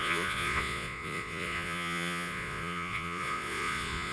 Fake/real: fake